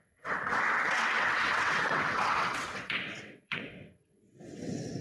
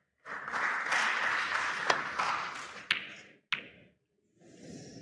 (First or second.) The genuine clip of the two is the second